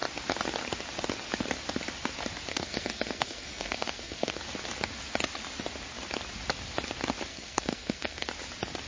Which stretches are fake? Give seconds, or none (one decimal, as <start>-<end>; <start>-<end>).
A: 2.5-4.4; 7.3-8.3